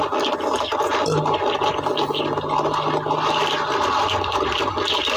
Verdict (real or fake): fake